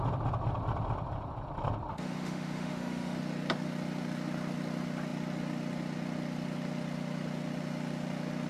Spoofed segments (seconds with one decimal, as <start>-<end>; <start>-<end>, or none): 1.9-3.2